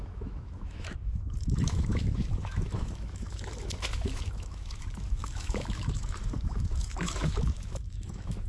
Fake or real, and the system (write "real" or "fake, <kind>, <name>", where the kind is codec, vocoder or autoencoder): fake, autoencoder, DAC-VAE